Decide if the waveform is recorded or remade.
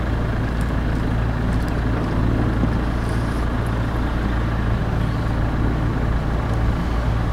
recorded